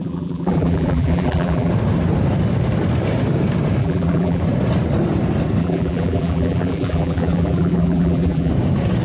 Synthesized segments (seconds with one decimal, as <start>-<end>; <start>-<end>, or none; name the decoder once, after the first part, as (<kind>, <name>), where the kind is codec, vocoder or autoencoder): 0.0-1.7 (vocoder, BigVGAN v2); 3.8-4.4; 5.6-8.5

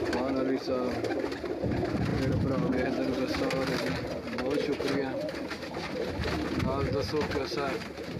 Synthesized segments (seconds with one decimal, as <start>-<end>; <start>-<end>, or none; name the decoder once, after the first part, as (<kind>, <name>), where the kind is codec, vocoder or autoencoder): none